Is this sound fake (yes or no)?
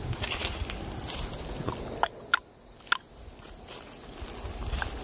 no